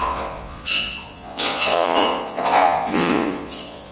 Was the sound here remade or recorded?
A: remade